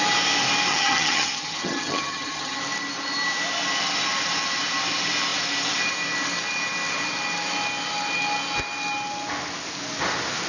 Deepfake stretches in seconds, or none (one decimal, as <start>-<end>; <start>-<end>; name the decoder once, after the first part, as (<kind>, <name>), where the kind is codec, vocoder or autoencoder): 0.7-2.6 (vocoder, HiFi-GAN)